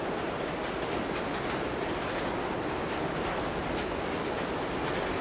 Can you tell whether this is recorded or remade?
recorded